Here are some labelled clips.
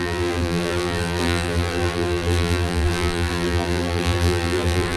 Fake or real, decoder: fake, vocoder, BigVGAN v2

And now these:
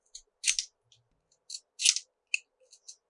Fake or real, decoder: real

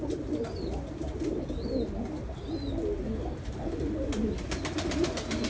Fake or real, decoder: real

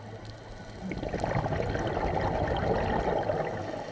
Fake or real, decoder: real